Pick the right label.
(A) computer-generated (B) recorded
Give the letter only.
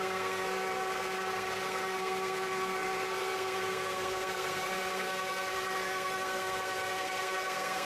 A